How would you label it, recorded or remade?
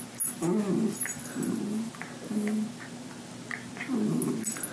recorded